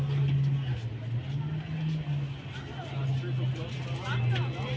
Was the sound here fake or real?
real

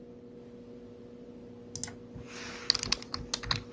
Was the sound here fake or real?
real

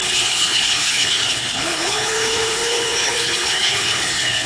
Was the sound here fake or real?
fake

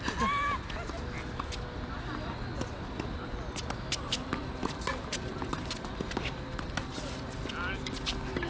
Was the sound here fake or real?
real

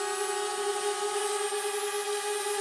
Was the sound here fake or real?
real